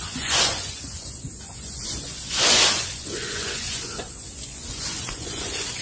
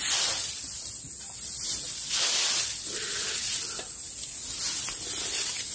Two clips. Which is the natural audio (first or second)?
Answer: second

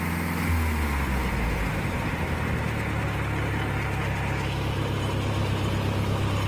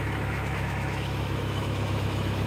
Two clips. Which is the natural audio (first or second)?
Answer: first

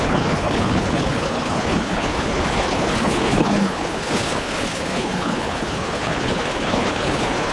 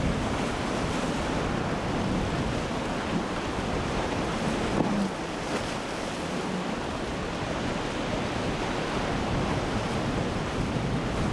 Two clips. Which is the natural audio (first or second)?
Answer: second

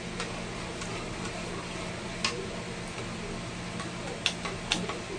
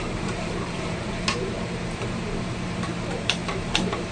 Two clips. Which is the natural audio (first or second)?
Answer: first